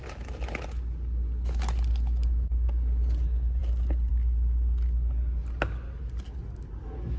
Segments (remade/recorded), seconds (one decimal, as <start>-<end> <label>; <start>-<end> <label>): 0.0-7.2 recorded